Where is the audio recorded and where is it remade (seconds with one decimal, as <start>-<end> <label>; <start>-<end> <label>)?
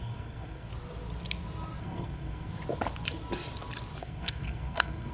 0.0-0.7 remade; 0.7-1.8 recorded; 1.8-2.5 remade; 2.5-4.0 recorded; 4.0-5.1 remade